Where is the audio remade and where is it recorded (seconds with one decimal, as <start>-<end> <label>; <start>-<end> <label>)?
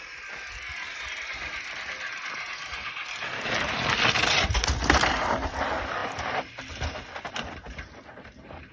0.0-8.7 recorded